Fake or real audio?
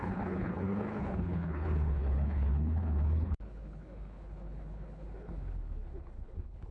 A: fake